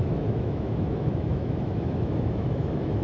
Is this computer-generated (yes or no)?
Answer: yes